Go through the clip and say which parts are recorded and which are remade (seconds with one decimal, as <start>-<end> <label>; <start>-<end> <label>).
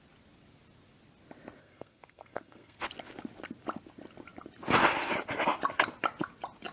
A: 0.0-1.6 recorded; 1.6-2.8 remade; 2.8-6.7 recorded